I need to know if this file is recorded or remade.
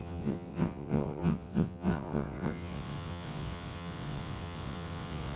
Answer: remade